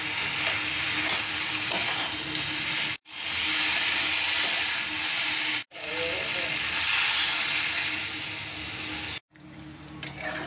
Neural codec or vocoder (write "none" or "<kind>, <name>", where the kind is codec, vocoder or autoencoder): none